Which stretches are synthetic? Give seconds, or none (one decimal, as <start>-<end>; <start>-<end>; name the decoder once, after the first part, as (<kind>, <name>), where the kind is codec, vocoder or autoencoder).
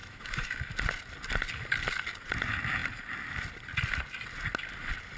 0.0-0.6 (autoencoder, DAC-VAE)